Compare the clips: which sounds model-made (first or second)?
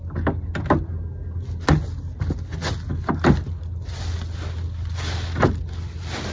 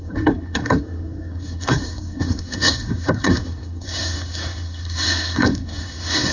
second